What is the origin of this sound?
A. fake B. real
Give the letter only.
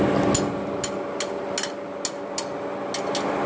B